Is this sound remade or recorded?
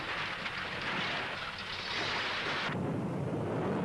recorded